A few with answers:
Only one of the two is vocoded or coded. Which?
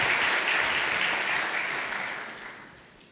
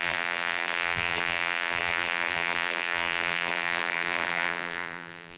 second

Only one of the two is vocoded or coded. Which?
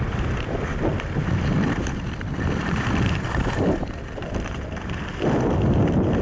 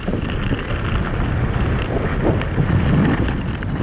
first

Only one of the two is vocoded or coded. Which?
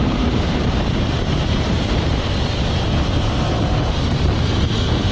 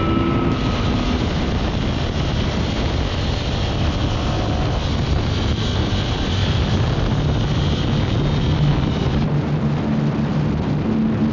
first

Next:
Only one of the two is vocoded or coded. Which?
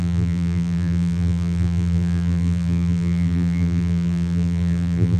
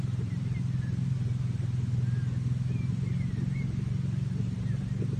first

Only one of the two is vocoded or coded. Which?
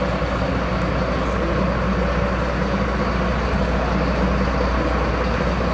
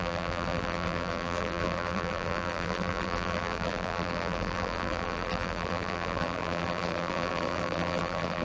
second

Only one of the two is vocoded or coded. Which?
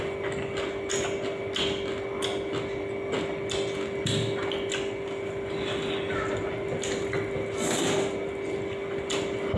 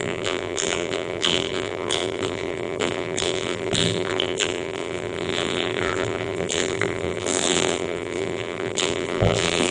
second